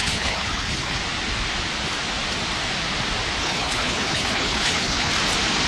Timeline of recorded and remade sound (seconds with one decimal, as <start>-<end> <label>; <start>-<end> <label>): 0.0-1.0 remade; 1.0-3.4 recorded; 3.4-5.1 remade; 5.1-5.7 recorded